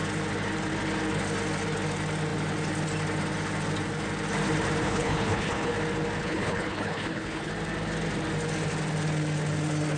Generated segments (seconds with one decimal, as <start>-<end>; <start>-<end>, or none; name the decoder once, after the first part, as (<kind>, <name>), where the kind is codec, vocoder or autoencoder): 4.8-5.7 (codec, HILCodec); 6.2-7.5